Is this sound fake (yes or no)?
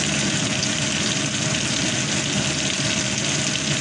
no